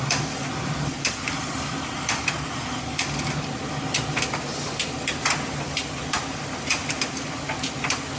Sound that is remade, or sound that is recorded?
recorded